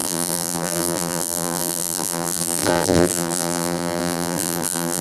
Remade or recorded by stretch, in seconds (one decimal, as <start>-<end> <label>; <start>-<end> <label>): 0.0-5.0 remade